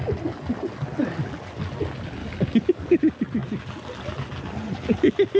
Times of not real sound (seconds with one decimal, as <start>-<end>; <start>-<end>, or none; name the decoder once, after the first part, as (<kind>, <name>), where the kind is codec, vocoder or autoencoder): 2.2-3.0 (codec, DAC)